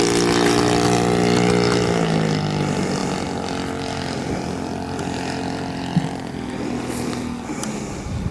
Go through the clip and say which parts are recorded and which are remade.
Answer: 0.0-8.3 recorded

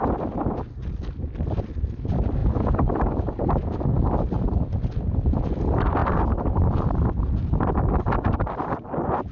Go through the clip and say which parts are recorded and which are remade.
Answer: 0.0-9.3 recorded

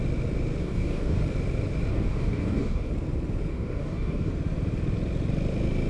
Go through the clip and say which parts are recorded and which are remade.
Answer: 0.0-0.6 recorded; 0.6-1.2 remade; 1.2-1.9 recorded; 1.9-2.9 remade; 2.9-3.5 recorded; 3.5-4.3 remade; 4.3-5.9 recorded

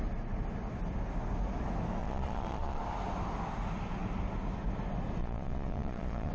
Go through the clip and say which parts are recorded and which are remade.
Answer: 0.0-2.0 recorded; 2.0-2.8 remade; 2.8-5.2 recorded; 5.2-6.3 remade

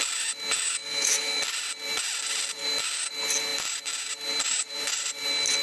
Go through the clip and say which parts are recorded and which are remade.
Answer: 0.0-0.8 recorded; 0.8-1.4 remade; 1.4-5.6 recorded

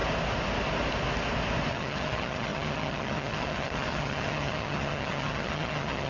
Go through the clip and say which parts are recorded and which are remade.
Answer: 0.0-1.7 recorded; 1.7-6.1 remade